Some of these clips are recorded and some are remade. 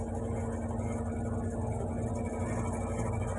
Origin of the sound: recorded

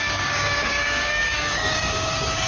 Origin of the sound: remade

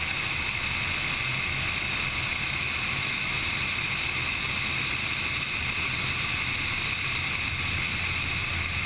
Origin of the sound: recorded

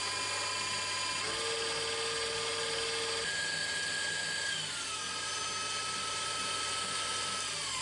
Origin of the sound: recorded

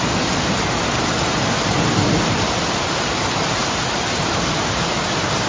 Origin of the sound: recorded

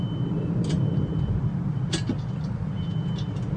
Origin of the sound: recorded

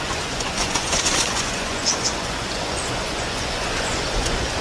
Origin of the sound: remade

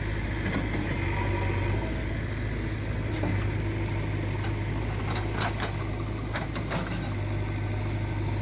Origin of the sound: recorded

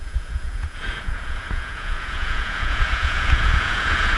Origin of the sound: remade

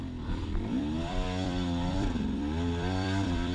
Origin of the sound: remade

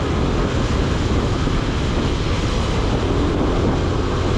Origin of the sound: recorded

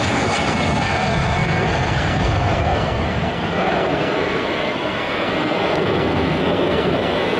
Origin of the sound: remade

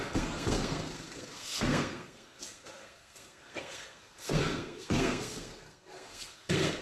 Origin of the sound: remade